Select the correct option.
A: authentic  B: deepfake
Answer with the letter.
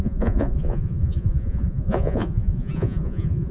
B